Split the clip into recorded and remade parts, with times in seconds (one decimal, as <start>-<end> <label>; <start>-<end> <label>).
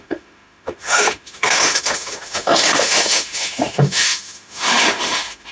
0.0-5.5 remade